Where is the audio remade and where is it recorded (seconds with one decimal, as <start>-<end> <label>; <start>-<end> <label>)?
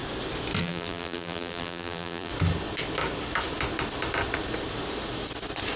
0.0-0.6 recorded; 0.6-2.3 remade; 2.3-5.8 recorded